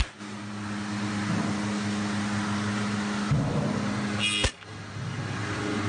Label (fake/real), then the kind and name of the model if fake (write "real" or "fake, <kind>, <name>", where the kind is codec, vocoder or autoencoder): real